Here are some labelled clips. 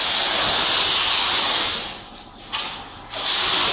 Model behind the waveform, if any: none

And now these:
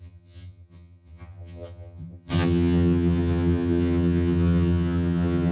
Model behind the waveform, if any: vocoder, HiFi-GAN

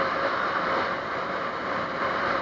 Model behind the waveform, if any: none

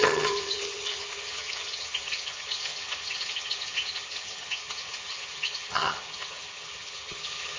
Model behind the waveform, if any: vocoder, HiFi-GAN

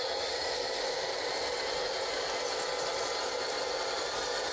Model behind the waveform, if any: none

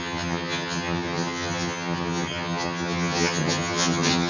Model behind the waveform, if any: vocoder, HiFi-GAN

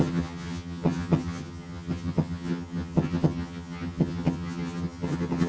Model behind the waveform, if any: vocoder, HiFi-GAN